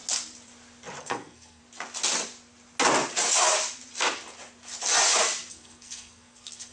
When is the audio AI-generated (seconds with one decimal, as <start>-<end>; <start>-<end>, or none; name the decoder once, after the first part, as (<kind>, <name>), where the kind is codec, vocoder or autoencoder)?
1.0-1.6 (codec, SNAC); 5.5-6.7

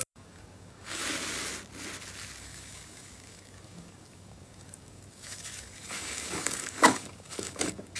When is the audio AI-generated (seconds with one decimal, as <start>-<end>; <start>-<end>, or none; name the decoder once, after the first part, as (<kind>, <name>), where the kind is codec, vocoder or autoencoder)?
0.0-1.0 (codec, DAC); 2.4-8.0

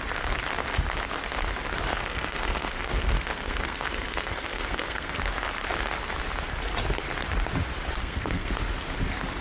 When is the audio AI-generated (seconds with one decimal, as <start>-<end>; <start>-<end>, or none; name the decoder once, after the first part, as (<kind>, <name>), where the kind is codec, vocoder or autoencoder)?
1.9-5.2 (codec, SNAC); 8.0-8.5

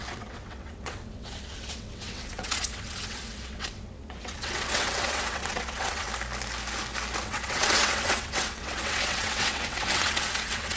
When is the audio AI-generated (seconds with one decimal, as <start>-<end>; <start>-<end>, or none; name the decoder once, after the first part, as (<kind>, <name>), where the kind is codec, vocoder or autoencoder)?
0.0-6.1 (vocoder, WaveNeXt); 7.2-10.8

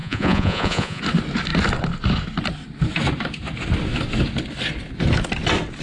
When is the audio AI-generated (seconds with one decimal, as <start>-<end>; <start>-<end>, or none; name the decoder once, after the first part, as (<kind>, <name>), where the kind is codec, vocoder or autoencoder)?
0.0-1.0 (vocoder, Vocos)

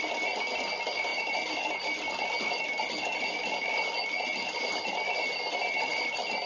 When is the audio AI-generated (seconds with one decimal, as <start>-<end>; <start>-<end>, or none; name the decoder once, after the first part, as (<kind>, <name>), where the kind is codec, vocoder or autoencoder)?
none

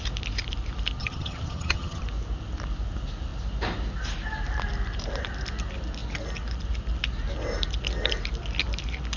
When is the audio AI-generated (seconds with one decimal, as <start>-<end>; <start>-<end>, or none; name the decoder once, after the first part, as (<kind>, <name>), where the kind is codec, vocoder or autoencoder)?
1.0-2.0 (vocoder, HiFi-GAN)